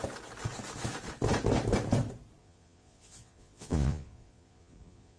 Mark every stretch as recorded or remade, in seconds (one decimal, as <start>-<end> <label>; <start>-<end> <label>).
0.0-2.4 recorded; 2.4-5.2 remade